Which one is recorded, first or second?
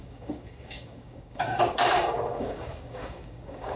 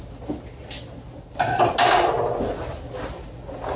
second